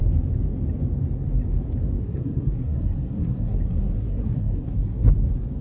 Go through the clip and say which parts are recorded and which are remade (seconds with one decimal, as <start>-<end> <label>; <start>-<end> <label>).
0.0-2.0 recorded; 2.0-5.1 remade; 5.1-5.6 recorded

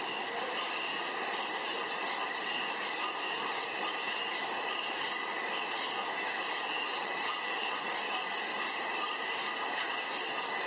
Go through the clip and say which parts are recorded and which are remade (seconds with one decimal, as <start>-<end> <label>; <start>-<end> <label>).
0.0-6.9 recorded; 6.9-7.9 remade; 7.9-10.7 recorded

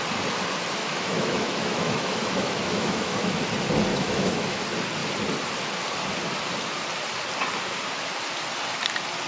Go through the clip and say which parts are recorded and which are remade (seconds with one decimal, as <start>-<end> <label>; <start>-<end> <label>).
0.0-0.8 recorded; 0.8-3.4 remade; 3.4-3.9 recorded; 3.9-4.6 remade; 4.6-9.3 recorded

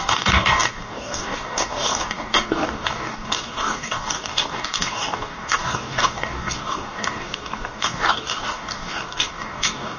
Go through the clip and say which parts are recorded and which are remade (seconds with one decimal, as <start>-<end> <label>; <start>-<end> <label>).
0.0-10.0 remade

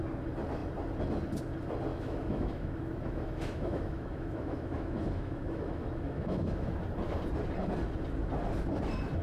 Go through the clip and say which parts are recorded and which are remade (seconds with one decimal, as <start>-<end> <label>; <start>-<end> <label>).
0.0-1.9 recorded; 1.9-6.8 remade; 6.8-9.2 recorded

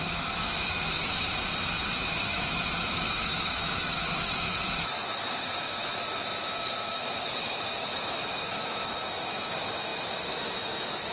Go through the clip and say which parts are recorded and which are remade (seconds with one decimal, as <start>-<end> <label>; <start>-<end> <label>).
0.0-1.3 remade; 1.3-2.1 recorded; 2.1-11.1 remade

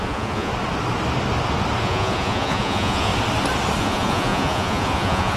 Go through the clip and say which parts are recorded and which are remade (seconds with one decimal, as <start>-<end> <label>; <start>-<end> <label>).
0.0-0.5 remade; 0.5-1.8 recorded; 1.8-3.1 remade; 3.1-3.8 recorded; 3.8-5.4 remade

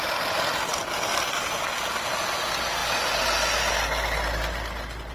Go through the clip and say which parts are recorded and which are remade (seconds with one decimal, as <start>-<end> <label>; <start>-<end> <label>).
0.0-5.1 recorded